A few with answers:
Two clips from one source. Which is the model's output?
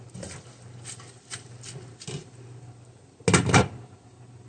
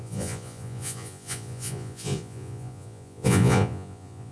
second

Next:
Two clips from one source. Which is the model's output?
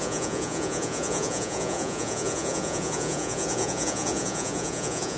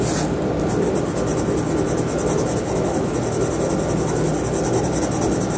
first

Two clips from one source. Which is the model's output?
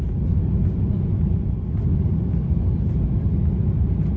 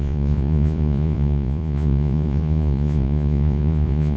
second